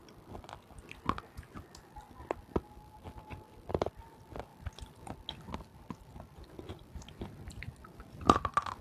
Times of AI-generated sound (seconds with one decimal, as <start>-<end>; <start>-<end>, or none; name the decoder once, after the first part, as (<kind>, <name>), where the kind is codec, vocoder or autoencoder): none